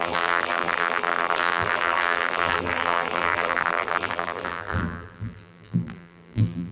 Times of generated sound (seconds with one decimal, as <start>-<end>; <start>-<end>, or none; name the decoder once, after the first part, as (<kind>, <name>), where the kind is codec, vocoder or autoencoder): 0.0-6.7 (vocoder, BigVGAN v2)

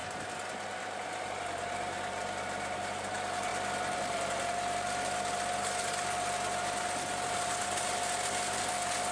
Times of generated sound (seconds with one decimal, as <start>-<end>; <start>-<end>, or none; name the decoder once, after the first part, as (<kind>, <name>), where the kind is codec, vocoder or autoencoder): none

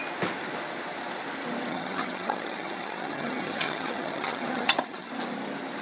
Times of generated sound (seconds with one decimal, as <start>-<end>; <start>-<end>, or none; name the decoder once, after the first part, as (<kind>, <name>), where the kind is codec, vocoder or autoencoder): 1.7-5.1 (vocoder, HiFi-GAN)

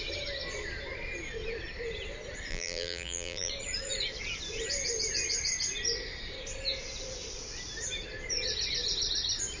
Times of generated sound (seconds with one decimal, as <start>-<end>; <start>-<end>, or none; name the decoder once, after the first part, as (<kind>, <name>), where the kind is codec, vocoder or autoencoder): 2.5-3.5 (vocoder, BigVGAN v2)